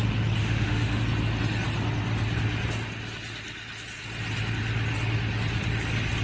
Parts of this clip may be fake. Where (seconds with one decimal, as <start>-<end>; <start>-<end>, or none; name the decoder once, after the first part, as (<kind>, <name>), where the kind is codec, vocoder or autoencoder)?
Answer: 0.4-1.0 (autoencoder, DAC-VAE)